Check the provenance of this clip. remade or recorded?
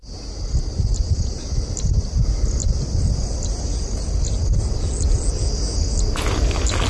recorded